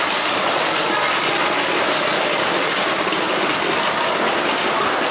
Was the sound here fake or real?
real